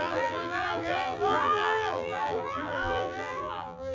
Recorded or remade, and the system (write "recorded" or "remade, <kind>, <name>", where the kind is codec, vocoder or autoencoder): remade, vocoder, BigVGAN v2